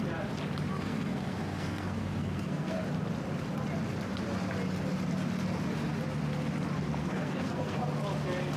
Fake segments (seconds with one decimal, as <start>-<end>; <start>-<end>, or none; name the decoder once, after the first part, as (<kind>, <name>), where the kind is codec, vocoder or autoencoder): 0.7-2.8 (codec, SNAC); 7.0-7.8